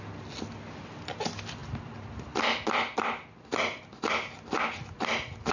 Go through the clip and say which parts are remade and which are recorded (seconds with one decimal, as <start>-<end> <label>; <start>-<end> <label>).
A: 0.0-5.5 recorded